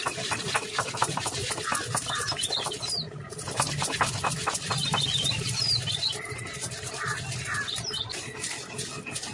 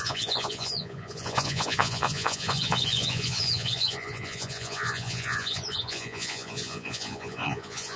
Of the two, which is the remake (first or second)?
second